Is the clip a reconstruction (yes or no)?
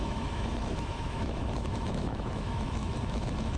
yes